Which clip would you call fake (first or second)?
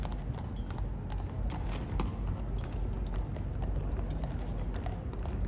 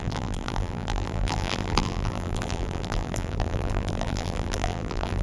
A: second